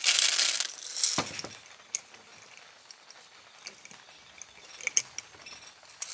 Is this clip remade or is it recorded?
recorded